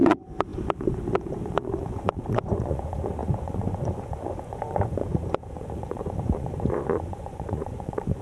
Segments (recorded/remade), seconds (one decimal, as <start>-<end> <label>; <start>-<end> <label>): 0.0-8.2 remade